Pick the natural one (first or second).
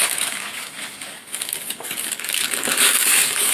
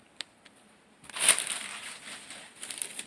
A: second